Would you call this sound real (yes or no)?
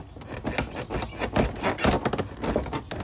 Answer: yes